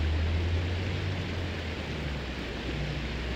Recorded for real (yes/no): yes